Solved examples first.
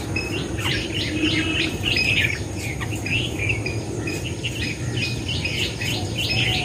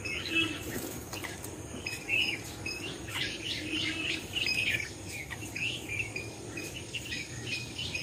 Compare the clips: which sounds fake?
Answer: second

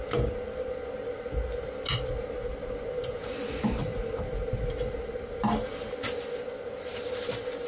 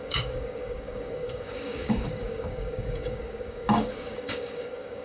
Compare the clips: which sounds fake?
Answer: second